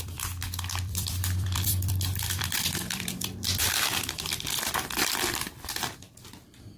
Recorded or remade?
remade